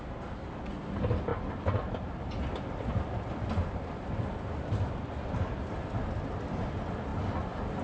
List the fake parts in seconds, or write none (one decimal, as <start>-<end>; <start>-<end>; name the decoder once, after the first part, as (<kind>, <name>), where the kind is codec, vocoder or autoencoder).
1.3-6.0 (vocoder, BigVGAN v2)